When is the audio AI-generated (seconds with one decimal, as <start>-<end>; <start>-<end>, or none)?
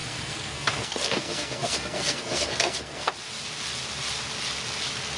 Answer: 0.0-3.1